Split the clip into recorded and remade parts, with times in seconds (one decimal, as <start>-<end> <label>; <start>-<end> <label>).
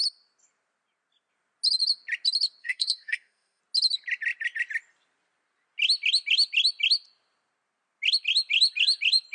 0.0-2.6 recorded; 2.6-3.6 remade; 3.6-9.3 recorded